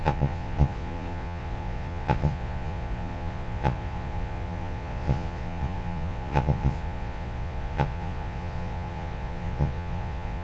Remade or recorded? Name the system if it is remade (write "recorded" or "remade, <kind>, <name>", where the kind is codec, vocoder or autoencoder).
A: remade, vocoder, Vocos